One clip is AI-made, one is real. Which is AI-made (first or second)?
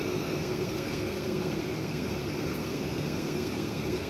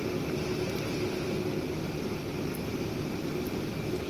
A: first